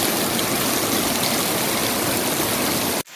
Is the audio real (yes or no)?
yes